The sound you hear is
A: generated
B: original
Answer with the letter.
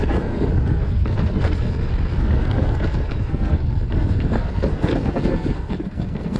A